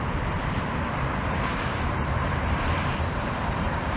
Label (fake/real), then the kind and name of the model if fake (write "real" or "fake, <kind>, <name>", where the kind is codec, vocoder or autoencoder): fake, vocoder, BigVGAN v2